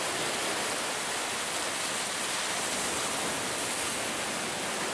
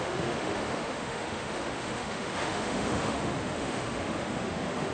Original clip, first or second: first